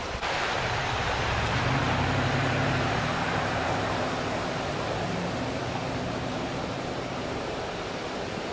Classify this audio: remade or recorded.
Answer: remade